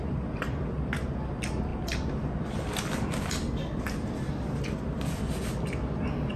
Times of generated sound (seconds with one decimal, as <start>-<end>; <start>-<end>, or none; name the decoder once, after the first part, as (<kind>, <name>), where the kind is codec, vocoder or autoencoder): none